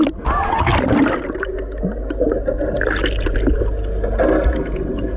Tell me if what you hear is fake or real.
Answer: real